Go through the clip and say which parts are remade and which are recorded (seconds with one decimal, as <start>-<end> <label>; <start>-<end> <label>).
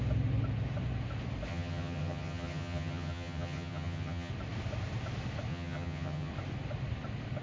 0.0-1.5 recorded; 1.5-4.3 remade; 4.3-5.5 recorded; 5.5-6.3 remade; 6.3-7.4 recorded